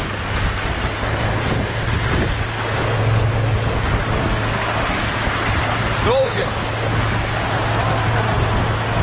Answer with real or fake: real